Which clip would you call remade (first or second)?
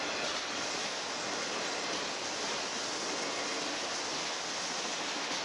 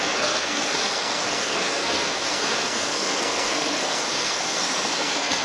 second